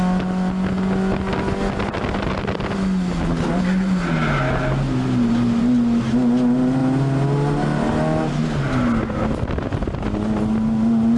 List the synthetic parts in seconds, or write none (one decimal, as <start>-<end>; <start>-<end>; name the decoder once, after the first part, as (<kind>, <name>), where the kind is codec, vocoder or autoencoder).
none